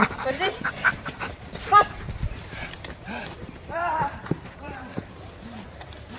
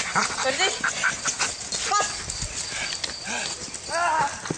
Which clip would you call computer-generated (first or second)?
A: first